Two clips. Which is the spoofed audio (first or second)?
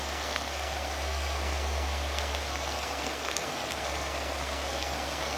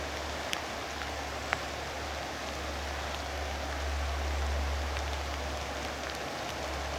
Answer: first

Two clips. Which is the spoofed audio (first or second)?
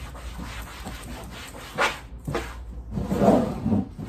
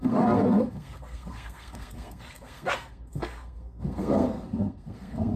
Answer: second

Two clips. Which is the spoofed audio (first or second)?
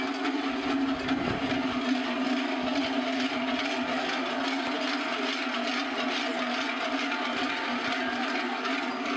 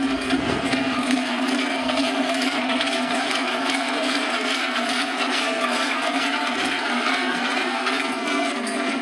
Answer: second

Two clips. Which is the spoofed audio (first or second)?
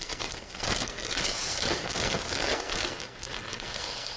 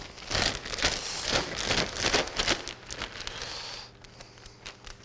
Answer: first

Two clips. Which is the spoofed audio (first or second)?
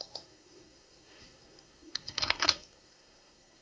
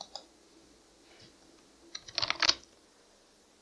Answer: first